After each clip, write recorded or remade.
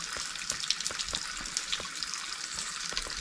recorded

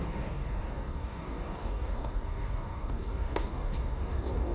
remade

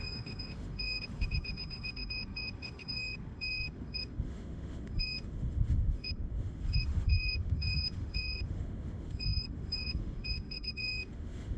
remade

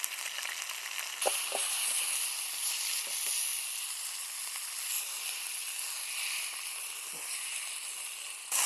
recorded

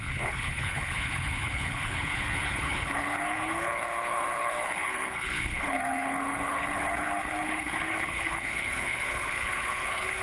remade